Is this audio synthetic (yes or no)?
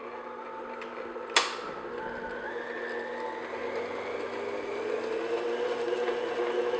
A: no